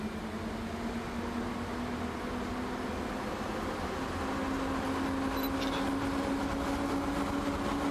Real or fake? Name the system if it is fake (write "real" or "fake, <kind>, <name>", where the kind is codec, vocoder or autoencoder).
real